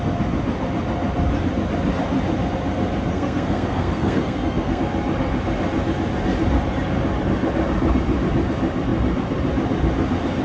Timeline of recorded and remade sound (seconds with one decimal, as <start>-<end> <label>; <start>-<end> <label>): 0.0-3.1 recorded; 3.1-4.8 remade; 4.8-10.4 recorded